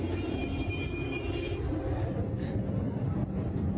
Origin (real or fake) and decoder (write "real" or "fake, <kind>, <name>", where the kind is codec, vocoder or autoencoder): fake, vocoder, BigVGAN v2